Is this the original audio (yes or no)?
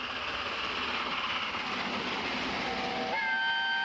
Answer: yes